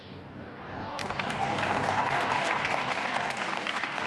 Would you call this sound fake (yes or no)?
yes